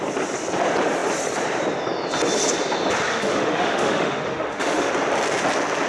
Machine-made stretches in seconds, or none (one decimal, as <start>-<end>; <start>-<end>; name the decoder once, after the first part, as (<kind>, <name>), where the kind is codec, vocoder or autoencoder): 3.1-4.9 (autoencoder, DAC-VAE)